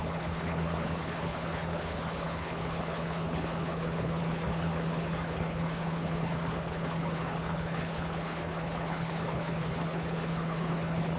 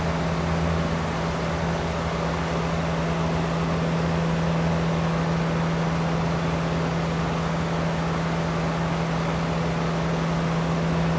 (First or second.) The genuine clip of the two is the second